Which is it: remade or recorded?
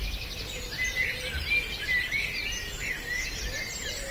recorded